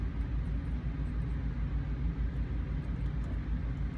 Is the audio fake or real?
real